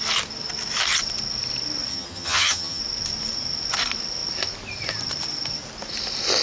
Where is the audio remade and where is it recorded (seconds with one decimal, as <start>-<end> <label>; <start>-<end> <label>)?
0.0-1.9 recorded; 1.9-2.8 remade; 2.8-6.4 recorded